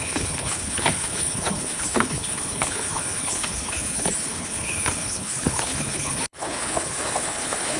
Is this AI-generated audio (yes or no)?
yes